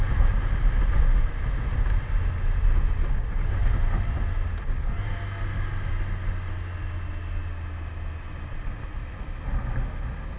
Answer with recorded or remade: recorded